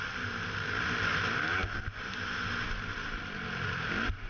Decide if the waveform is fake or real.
real